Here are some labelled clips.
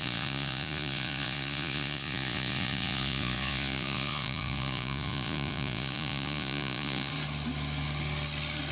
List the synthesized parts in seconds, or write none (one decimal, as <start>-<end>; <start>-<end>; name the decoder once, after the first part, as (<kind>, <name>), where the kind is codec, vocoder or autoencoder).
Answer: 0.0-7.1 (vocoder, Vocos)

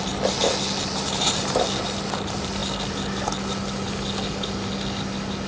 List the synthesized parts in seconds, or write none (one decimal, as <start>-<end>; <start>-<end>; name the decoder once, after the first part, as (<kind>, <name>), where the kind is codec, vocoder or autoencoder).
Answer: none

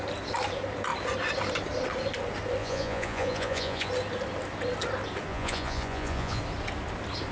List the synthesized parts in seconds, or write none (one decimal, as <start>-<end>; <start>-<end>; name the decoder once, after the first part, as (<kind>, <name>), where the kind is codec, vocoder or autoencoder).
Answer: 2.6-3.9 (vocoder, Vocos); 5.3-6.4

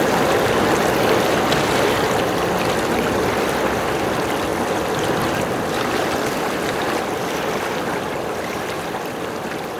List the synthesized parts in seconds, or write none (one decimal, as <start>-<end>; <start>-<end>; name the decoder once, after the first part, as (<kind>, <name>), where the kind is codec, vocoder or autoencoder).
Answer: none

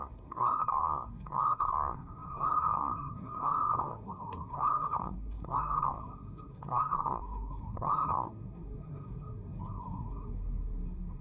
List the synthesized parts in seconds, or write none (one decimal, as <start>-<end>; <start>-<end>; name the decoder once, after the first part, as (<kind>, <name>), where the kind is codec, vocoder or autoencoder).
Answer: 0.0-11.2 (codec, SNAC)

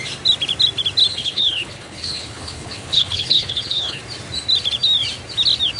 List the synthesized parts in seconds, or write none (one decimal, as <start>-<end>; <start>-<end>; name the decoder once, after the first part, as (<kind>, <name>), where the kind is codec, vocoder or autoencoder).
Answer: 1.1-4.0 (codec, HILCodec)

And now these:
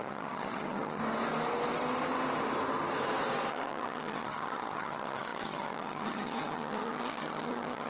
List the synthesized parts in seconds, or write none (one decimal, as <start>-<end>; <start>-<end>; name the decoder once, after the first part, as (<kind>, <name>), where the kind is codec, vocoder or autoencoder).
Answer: 0.0-1.0 (vocoder, HiFi-GAN); 3.5-7.9